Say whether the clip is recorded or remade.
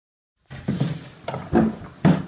recorded